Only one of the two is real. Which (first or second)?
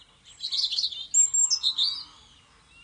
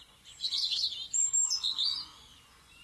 first